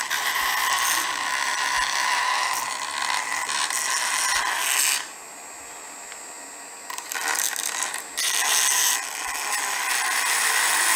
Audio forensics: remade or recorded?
recorded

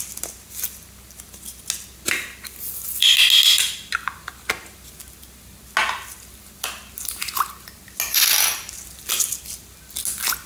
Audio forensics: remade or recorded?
recorded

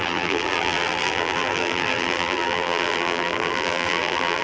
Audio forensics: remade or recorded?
remade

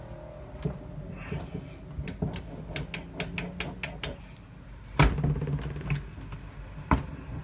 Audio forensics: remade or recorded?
recorded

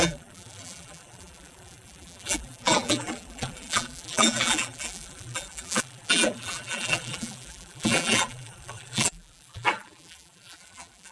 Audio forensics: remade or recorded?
remade